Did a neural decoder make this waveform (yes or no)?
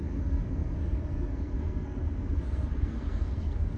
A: yes